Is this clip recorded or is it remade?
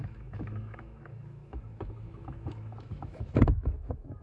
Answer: remade